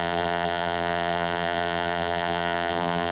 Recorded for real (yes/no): no